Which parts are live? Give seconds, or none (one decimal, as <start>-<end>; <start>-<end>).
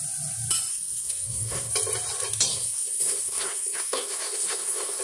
0.0-0.7; 1.7-2.5